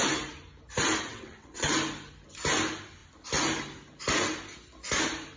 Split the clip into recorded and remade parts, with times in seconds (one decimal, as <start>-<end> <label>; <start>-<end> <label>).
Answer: 0.0-1.1 recorded; 1.1-1.7 remade; 1.7-5.4 recorded